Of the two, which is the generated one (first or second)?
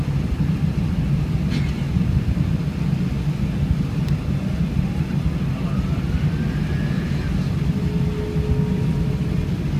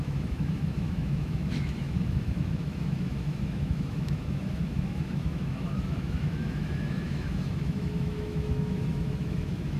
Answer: second